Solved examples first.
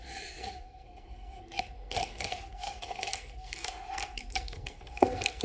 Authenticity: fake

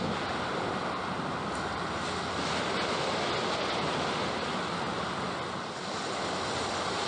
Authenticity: real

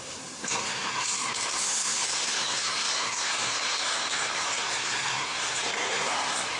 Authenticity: fake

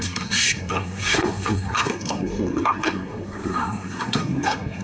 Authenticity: fake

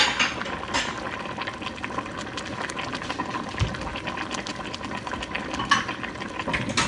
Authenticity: real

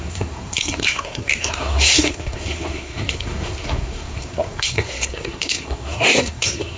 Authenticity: fake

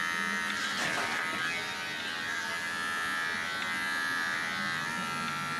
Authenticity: real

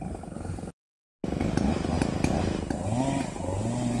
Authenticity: real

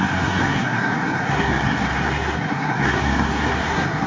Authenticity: fake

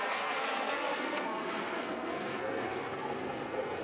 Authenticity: fake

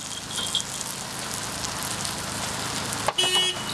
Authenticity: real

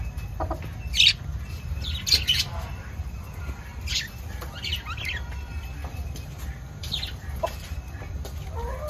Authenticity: real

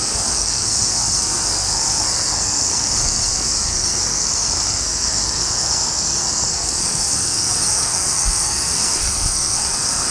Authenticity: fake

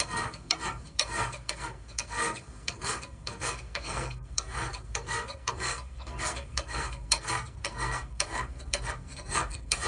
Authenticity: fake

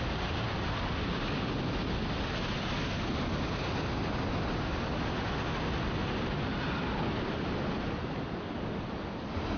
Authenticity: real